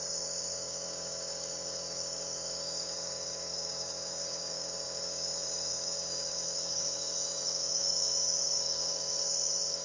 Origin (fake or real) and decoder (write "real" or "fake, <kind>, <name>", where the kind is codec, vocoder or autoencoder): fake, codec, DAC